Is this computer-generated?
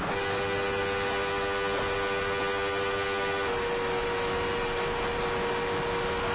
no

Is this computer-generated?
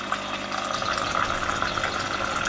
no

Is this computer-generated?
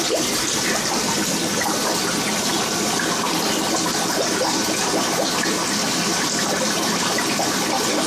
no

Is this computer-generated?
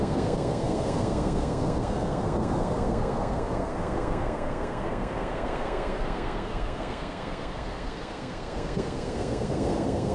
yes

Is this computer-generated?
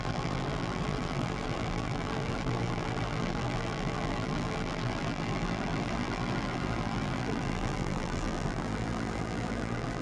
yes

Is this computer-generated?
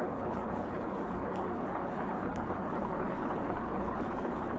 yes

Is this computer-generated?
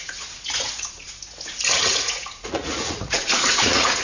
yes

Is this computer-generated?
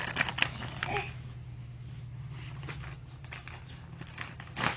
no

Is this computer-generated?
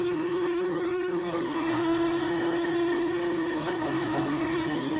yes